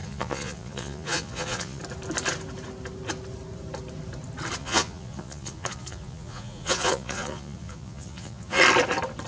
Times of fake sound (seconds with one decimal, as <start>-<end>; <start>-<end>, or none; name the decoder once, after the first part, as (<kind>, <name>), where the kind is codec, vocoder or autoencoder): 0.0-1.8 (vocoder, Vocos); 4.6-8.6